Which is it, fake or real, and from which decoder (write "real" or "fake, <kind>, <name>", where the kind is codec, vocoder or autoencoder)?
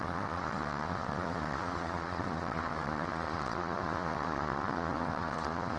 fake, vocoder, Vocos